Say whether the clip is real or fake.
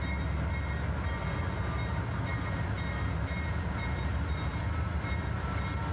real